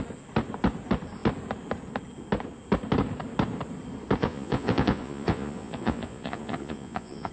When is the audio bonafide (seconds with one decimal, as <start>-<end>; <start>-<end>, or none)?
0.0-4.2